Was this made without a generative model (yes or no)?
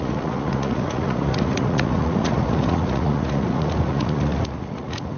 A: no